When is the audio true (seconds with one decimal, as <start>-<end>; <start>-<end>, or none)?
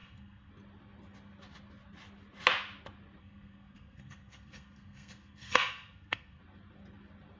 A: 0.5-3.2; 6.4-7.4